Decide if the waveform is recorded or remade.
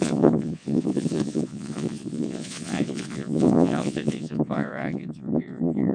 remade